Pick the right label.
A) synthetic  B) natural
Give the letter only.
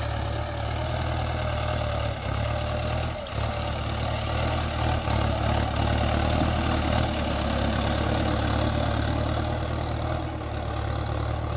B